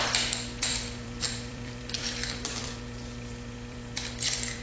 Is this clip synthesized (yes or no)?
yes